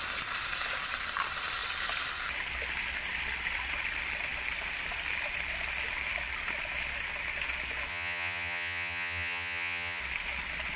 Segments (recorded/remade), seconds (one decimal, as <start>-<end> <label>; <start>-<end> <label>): 0.0-7.9 recorded; 7.9-10.0 remade; 10.0-10.8 recorded